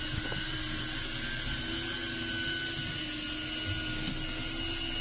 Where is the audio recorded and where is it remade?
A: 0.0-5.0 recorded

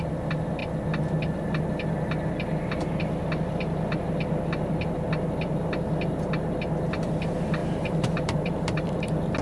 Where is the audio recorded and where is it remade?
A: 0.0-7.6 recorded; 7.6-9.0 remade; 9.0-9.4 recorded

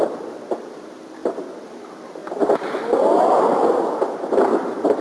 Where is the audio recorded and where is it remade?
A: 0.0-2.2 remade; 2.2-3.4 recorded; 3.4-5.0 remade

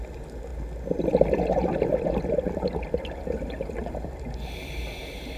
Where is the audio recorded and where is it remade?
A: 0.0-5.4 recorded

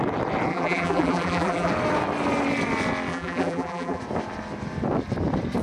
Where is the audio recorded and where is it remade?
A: 0.0-0.5 recorded; 0.5-1.7 remade; 1.7-3.1 recorded; 3.1-4.0 remade; 4.0-5.6 recorded

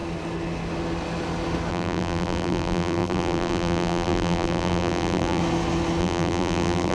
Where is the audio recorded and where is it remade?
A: 0.0-1.7 recorded; 1.7-5.4 remade; 5.4-6.0 recorded; 6.0-6.9 remade

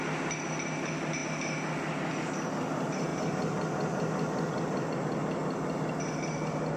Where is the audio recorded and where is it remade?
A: 0.0-6.8 recorded

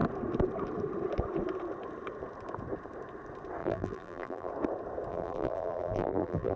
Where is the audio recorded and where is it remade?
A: 0.0-3.6 recorded; 3.6-4.5 remade; 4.5-5.1 recorded; 5.1-6.6 remade